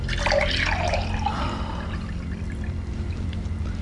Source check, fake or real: real